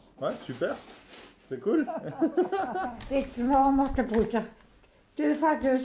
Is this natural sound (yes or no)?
yes